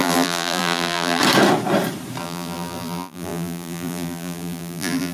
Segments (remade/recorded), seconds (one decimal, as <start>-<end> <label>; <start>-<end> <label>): 0.0-1.2 remade; 1.2-2.2 recorded; 2.2-5.1 remade